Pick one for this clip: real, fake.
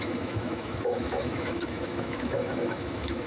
fake